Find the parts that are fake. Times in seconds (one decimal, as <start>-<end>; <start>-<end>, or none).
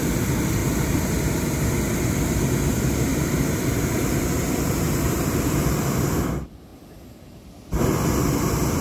0.6-1.7; 3.1-5.6